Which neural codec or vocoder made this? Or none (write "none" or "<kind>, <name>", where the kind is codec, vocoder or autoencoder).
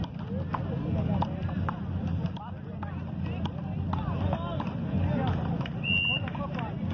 none